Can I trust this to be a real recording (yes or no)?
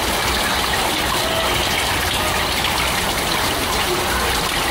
yes